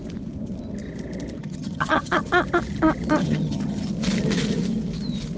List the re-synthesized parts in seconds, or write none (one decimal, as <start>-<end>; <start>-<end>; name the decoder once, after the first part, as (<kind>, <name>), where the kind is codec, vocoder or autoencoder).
1.4-2.3 (vocoder, HiFi-GAN); 3.2-3.9